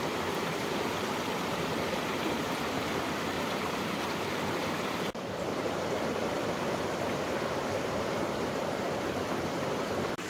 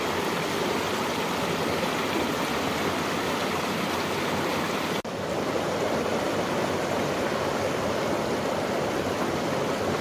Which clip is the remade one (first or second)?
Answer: first